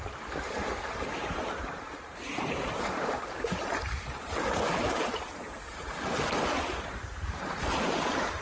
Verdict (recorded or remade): remade